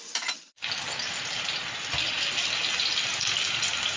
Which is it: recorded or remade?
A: recorded